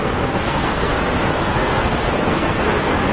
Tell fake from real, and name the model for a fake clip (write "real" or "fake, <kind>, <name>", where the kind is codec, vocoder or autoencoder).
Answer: fake, codec, SNAC